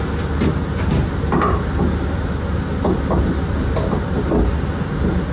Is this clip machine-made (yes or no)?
no